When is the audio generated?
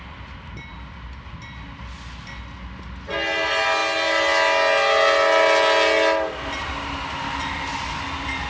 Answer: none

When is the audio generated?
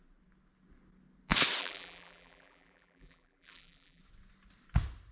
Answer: 1.6-4.0 (vocoder, BigVGAN v2)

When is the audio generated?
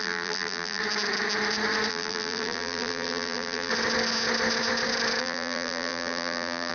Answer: 0.0-0.8 (vocoder, BigVGAN v2); 1.9-3.7; 5.2-6.7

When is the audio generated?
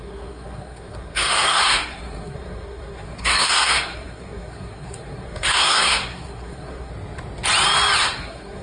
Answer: 0.0-6.9 (codec, SNAC); 8.0-8.6